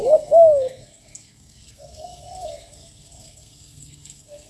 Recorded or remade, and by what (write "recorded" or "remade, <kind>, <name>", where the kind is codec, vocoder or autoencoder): remade, codec, SNAC